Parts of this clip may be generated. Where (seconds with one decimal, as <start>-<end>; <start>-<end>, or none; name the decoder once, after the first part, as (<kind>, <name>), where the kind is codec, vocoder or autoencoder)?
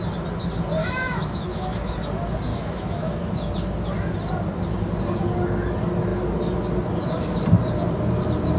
0.8-1.9 (autoencoder, DAC-VAE); 2.5-3.5